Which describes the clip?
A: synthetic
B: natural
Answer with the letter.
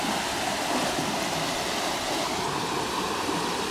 B